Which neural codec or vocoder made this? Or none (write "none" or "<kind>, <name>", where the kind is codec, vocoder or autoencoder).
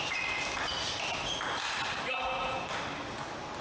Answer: none